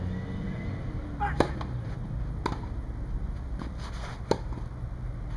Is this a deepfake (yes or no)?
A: no